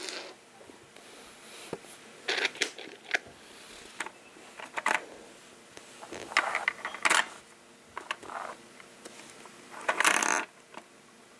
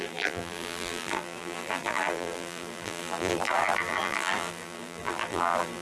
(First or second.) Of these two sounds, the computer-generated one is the second